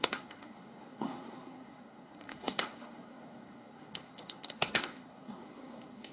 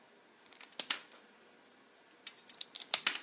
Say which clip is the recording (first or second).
second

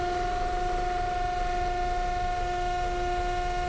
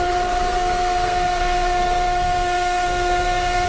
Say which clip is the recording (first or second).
first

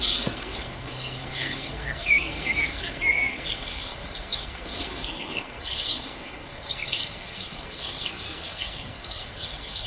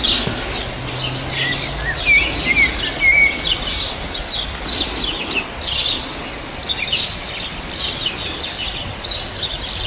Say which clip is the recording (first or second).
second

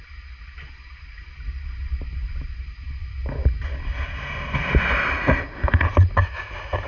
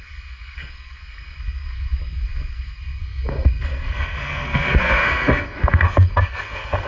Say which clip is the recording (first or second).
first